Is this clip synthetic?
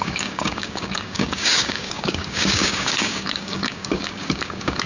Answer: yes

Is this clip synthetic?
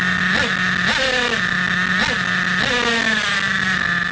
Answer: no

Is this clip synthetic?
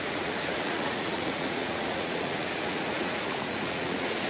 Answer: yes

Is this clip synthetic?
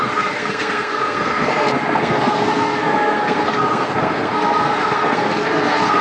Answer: yes